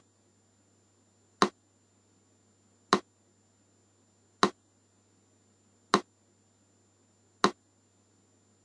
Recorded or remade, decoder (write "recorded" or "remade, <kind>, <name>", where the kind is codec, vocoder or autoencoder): recorded